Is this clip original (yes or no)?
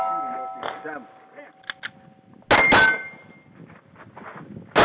yes